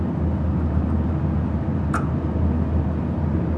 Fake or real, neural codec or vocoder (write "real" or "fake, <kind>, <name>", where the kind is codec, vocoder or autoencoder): real